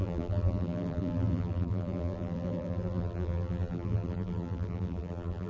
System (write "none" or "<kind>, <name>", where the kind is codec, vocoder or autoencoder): vocoder, BigVGAN v2